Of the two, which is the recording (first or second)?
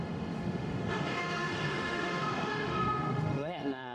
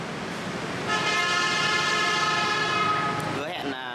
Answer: second